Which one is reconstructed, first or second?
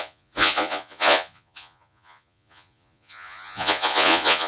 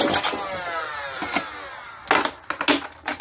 first